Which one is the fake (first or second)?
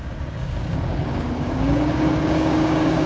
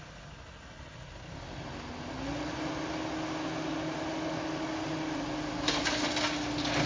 first